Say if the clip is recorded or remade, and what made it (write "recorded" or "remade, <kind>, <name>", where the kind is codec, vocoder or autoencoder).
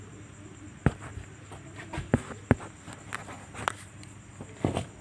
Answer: recorded